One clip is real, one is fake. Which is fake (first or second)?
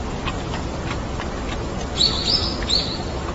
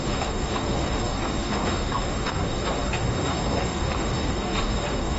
second